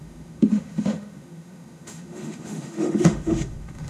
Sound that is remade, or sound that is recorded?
remade